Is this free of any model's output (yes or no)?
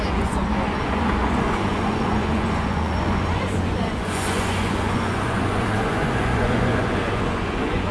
no